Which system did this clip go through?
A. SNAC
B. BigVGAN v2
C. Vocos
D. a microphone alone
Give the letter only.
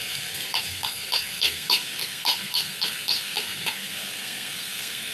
A